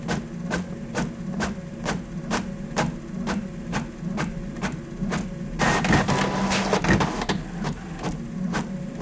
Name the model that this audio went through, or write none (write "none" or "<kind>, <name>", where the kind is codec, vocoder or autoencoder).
none